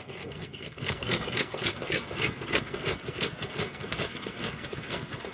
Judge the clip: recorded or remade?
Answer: remade